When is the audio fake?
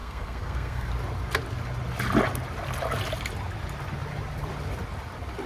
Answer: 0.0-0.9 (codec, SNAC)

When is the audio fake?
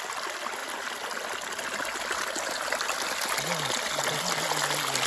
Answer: none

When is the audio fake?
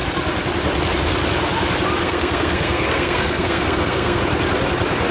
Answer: 2.0-4.2 (codec, SNAC)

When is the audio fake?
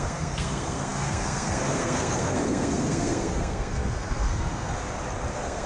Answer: 0.0-4.8 (codec, SNAC); 5.3-5.7